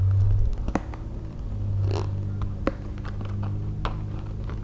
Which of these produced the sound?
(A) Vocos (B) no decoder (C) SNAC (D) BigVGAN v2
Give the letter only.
B